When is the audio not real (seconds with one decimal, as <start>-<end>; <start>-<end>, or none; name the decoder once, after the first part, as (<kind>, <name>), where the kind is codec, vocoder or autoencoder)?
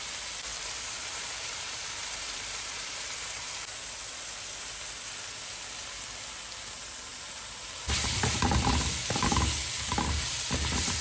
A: 0.5-3.5 (vocoder, BigVGAN v2); 7.1-8.7